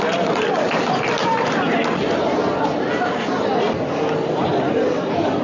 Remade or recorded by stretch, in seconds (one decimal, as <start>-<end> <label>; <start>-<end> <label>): 0.0-5.4 recorded